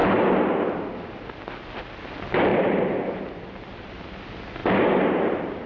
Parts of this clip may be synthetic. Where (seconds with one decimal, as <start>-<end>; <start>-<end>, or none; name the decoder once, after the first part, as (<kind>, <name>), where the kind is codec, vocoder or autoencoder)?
2.5-3.1 (vocoder, BigVGAN v2); 4.6-5.7